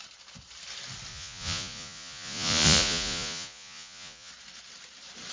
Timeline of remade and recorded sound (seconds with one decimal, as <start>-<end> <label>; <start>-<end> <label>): 0.0-1.1 recorded; 1.1-4.3 remade; 4.3-5.3 recorded